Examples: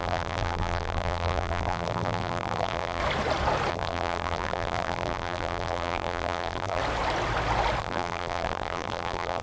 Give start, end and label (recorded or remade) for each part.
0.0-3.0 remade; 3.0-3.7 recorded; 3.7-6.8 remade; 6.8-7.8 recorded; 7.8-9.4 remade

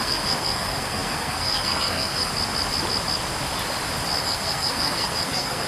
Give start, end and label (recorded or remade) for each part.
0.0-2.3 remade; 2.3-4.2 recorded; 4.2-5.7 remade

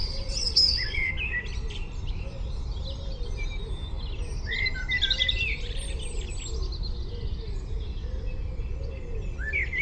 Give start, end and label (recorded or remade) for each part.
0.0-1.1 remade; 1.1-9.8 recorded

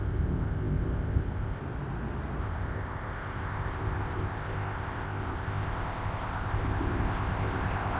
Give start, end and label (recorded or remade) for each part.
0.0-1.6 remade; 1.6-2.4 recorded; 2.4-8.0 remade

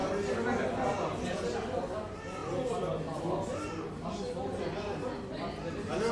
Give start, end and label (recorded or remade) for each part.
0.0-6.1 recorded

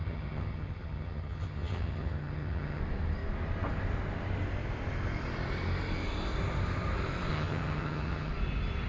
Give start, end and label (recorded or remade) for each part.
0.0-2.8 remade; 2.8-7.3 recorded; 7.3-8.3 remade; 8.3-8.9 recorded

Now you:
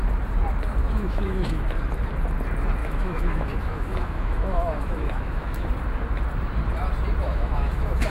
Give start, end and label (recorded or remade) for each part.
0.0-0.8 recorded; 0.8-1.6 remade; 1.6-2.8 recorded; 2.8-5.7 remade; 5.7-7.2 recorded; 7.2-8.1 remade

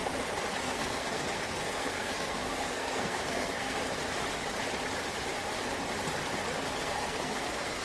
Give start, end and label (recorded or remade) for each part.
0.0-0.6 recorded; 0.6-3.8 remade; 3.8-6.8 recorded; 6.8-7.8 remade